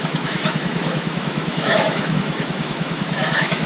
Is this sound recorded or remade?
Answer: remade